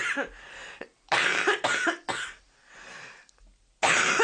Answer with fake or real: real